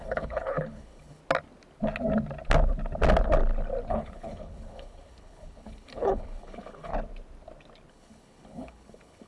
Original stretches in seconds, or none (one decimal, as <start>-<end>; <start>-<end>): 1.2-3.9; 6.9-7.9

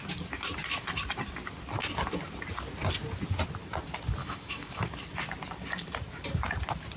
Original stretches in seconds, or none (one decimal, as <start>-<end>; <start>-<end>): 0.0-4.2; 4.8-7.0

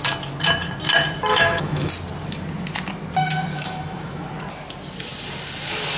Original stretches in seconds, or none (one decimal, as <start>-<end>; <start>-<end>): 0.0-1.3; 1.9-3.5; 4.2-6.0

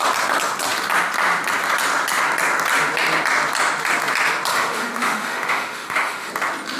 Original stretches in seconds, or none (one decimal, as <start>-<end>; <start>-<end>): 0.0-4.5; 6.3-6.8

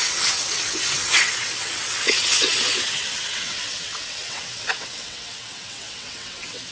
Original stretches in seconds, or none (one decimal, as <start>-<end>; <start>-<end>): none